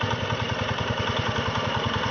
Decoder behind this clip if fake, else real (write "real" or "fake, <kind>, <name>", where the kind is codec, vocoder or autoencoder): real